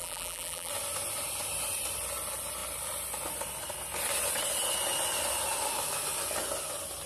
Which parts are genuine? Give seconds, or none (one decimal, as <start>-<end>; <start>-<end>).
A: 0.7-7.1